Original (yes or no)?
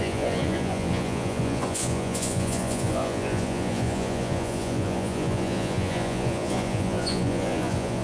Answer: no